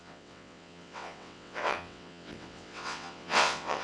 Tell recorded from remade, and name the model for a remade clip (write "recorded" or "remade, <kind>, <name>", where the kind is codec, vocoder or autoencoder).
remade, vocoder, WaveNeXt